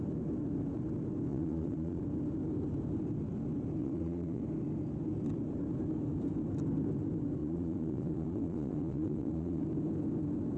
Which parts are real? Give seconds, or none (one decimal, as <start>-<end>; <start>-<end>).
0.0-1.3; 2.0-3.8; 4.4-7.4; 9.6-10.6